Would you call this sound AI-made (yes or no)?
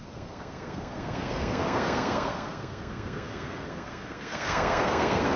yes